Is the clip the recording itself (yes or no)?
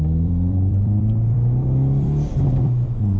no